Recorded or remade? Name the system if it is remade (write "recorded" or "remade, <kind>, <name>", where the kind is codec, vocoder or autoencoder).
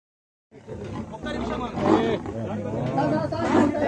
recorded